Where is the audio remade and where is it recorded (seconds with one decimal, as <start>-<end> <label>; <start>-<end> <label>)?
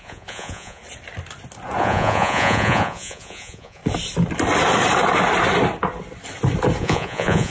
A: 0.0-0.8 remade; 0.8-1.8 recorded; 1.8-3.8 remade; 3.8-6.8 recorded; 6.8-7.5 remade